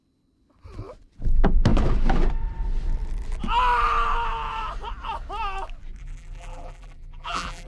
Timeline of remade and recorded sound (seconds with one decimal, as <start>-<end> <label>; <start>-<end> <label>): 0.0-6.0 recorded; 6.0-7.7 remade